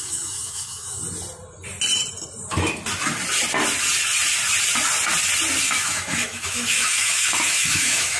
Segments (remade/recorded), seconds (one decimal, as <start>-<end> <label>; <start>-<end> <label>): 0.0-1.0 remade; 1.0-5.6 recorded; 5.6-8.2 remade